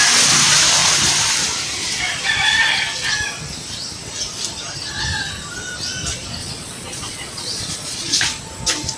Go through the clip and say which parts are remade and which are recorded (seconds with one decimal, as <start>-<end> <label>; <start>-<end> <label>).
0.0-6.4 recorded; 6.4-8.2 remade; 8.2-9.0 recorded

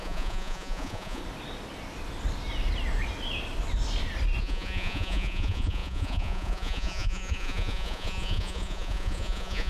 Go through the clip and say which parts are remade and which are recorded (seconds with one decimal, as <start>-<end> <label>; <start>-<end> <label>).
0.0-1.2 remade; 1.2-4.4 recorded; 4.4-9.7 remade